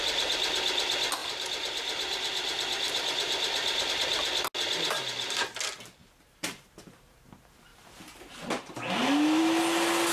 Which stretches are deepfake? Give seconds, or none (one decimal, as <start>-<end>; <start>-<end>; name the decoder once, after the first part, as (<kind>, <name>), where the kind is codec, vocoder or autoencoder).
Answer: 1.2-3.9 (vocoder, BigVGAN v2); 6.0-7.2; 7.7-9.4